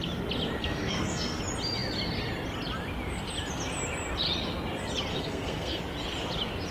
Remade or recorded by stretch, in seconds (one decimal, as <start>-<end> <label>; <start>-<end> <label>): 0.0-0.6 recorded; 0.6-1.4 remade; 1.4-5.1 recorded; 5.1-5.8 remade; 5.8-6.7 recorded